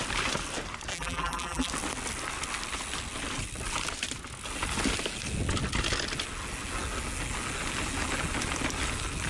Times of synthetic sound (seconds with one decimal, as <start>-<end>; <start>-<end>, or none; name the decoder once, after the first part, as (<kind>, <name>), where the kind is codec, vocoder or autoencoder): 0.9-1.7 (vocoder, BigVGAN v2)